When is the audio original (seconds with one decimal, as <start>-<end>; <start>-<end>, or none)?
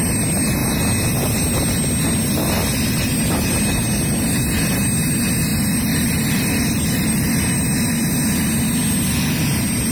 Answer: 0.0-5.5; 7.4-9.9